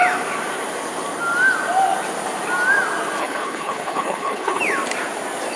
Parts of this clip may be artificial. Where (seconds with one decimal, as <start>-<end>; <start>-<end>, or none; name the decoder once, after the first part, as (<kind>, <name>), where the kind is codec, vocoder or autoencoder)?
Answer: 3.2-4.6 (codec, HILCodec)